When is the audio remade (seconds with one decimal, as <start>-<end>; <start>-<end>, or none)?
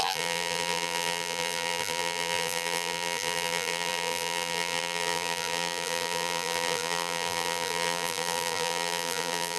0.0-9.6